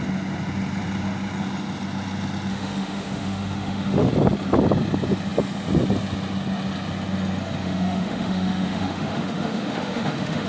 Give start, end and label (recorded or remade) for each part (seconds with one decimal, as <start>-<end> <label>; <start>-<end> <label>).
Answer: 0.0-2.5 recorded; 2.5-4.1 remade; 4.1-7.6 recorded; 7.6-10.5 remade